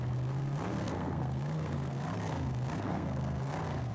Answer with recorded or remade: remade